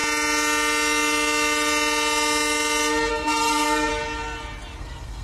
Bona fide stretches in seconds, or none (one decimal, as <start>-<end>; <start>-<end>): 0.0-3.1; 3.9-4.8